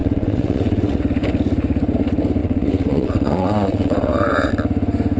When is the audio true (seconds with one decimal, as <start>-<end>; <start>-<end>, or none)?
1.0-2.4; 4.5-5.2